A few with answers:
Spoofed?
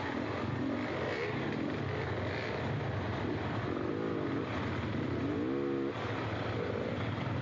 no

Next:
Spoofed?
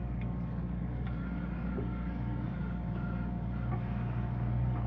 yes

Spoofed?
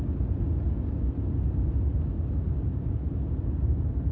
no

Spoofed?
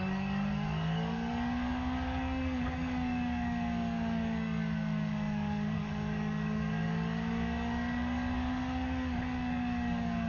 yes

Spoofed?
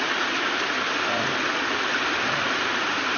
no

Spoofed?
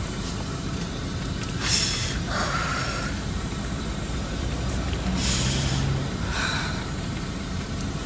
yes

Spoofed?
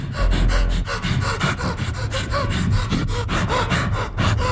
no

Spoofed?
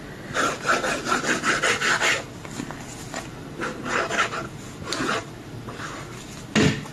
no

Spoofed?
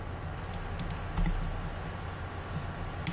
no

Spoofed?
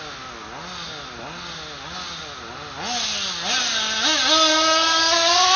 no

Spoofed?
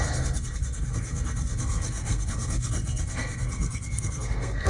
yes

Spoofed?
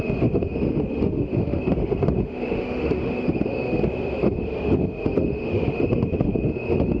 yes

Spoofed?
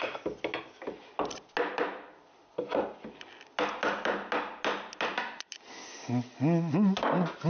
no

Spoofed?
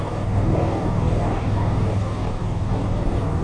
yes